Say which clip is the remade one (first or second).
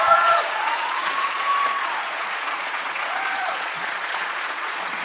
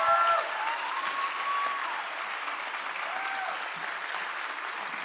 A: first